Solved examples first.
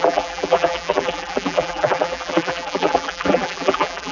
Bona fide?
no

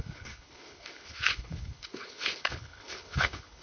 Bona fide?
no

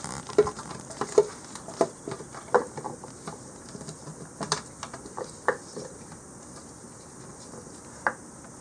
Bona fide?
yes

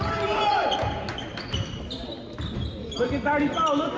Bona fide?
yes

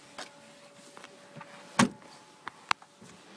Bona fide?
yes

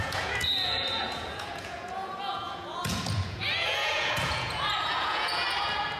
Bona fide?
no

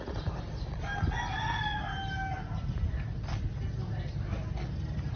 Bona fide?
yes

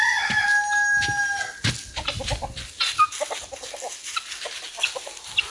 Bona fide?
yes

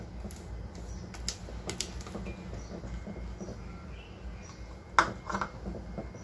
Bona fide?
yes